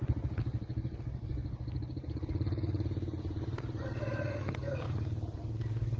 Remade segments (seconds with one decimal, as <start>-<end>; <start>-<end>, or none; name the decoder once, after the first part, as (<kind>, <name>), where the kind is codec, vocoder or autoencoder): 1.3-3.6 (vocoder, BigVGAN v2); 4.1-5.4